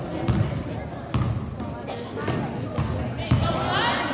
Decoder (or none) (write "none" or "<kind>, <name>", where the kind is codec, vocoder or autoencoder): none